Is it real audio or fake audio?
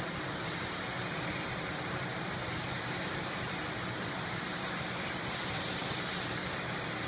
real